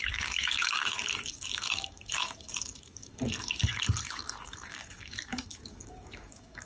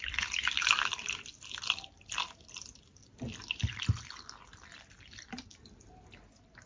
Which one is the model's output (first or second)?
first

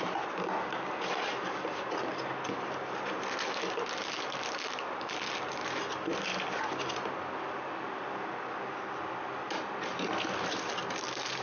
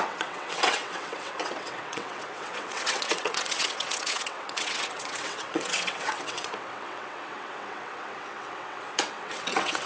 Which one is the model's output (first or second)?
second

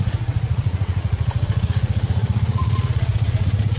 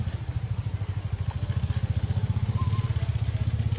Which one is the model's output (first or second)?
first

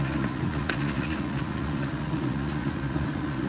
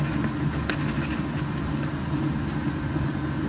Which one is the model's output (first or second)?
first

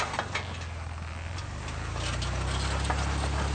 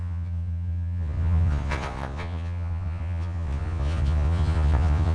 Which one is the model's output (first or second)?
second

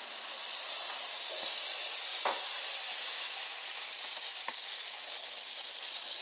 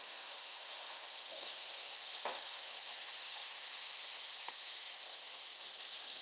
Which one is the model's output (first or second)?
second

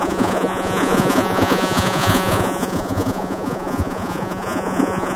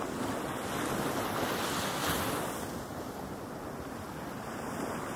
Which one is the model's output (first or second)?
first